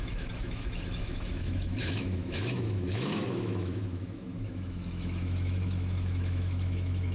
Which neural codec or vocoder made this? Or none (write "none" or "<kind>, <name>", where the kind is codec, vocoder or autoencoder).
autoencoder, DAC-VAE